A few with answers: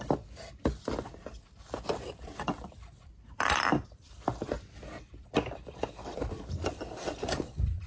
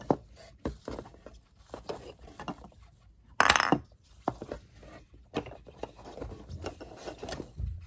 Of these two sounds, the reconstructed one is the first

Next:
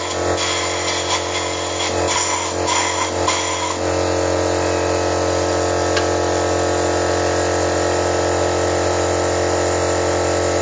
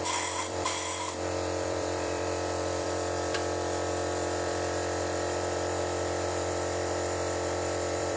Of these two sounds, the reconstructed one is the second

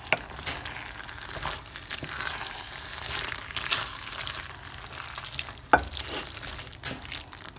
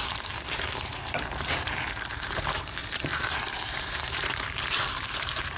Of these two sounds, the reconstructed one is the second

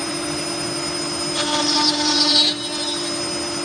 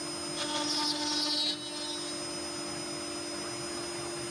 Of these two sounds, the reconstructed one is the first